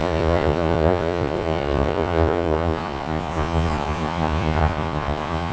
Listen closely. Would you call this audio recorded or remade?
remade